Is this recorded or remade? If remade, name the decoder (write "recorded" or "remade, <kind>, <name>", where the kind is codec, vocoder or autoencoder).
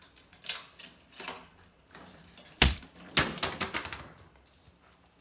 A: recorded